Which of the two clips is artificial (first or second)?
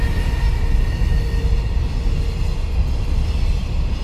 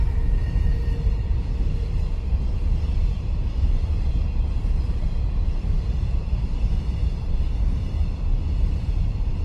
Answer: second